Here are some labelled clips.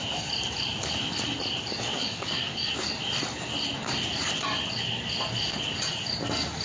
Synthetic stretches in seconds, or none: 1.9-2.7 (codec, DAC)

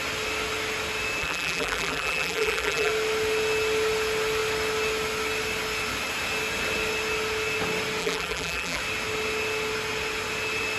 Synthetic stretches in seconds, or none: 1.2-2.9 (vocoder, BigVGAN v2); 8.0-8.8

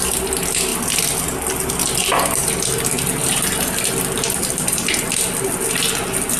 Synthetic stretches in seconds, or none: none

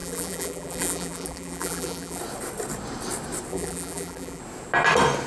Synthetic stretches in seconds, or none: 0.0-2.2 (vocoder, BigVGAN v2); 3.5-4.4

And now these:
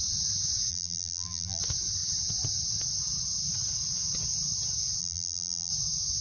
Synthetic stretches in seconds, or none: 0.7-1.6 (vocoder, BigVGAN v2); 5.0-5.7

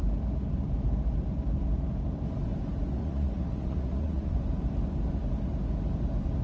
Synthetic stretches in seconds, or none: 3.0-4.3 (vocoder, Vocos)

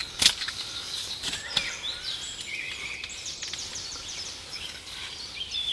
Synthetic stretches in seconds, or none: 0.0-1.3 (codec, DAC); 4.5-5.0